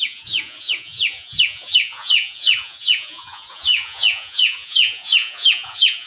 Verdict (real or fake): fake